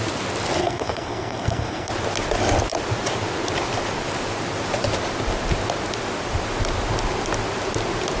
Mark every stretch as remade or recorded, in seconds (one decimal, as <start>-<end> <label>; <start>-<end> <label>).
0.0-0.6 recorded; 0.6-1.9 remade; 1.9-8.2 recorded